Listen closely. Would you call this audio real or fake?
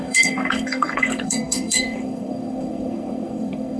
fake